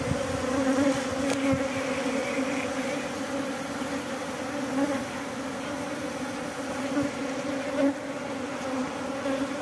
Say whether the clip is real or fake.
real